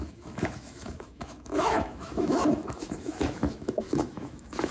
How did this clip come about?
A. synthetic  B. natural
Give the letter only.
A